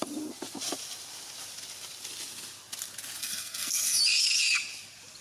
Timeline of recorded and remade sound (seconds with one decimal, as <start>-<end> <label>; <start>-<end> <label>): 0.0-3.2 recorded; 3.2-4.0 remade; 4.0-5.2 recorded

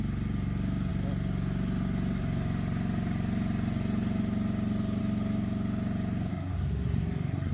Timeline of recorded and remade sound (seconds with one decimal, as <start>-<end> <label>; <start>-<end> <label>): 0.0-6.3 recorded; 6.3-7.5 remade

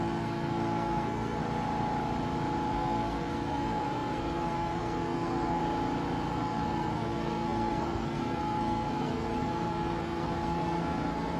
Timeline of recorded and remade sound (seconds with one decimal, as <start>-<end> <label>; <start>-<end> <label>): 0.0-1.4 remade; 1.4-2.7 recorded; 2.7-5.6 remade; 5.6-6.3 recorded; 6.3-11.4 remade

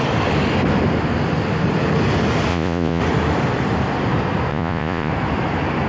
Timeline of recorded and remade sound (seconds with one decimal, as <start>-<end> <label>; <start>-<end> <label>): 0.0-2.5 recorded; 2.5-3.0 remade; 3.0-4.5 recorded; 4.5-5.1 remade; 5.1-5.9 recorded

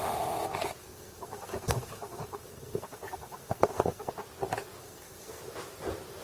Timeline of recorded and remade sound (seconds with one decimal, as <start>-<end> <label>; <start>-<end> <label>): 0.0-0.8 recorded; 0.8-4.1 remade; 4.1-4.8 recorded; 4.8-5.4 remade; 5.4-6.2 recorded

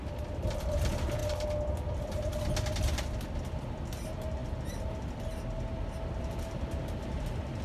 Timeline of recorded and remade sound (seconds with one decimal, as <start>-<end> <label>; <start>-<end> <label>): 0.0-7.6 recorded

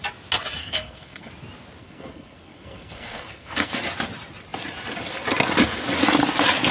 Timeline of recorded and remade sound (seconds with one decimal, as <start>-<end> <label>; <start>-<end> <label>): 0.0-0.6 recorded; 0.6-1.3 remade; 1.3-1.8 recorded; 1.8-3.8 remade; 3.8-6.7 recorded

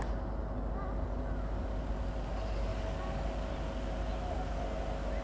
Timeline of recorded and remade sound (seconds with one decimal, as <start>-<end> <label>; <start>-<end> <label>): 0.0-5.2 recorded